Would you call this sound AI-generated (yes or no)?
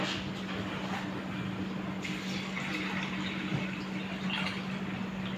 no